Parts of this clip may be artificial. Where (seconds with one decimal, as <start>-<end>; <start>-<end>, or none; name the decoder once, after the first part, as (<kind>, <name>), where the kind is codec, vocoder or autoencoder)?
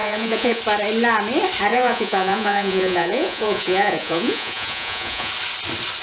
0.0-0.6 (vocoder, Vocos); 1.7-5.3